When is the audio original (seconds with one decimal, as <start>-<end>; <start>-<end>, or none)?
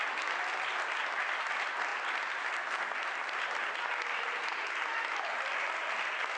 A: 0.0-6.4